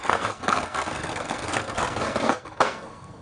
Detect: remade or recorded remade